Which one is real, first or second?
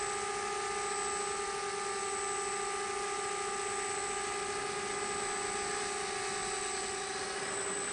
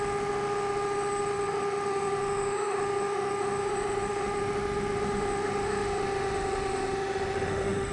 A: first